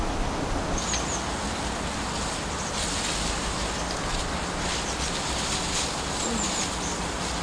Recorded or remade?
recorded